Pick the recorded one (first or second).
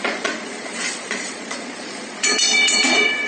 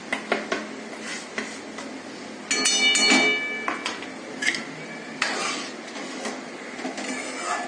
second